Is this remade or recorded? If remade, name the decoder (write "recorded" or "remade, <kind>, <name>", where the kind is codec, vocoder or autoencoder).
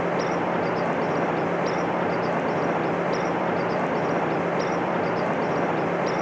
remade, vocoder, BigVGAN v2